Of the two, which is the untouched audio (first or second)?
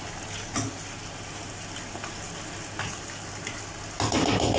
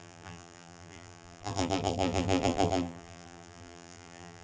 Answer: first